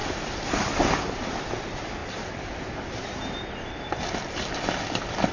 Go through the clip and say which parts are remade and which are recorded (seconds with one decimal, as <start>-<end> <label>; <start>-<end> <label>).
0.0-0.9 remade; 0.9-5.3 recorded